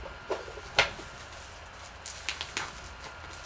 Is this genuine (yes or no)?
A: yes